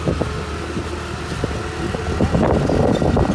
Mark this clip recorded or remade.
recorded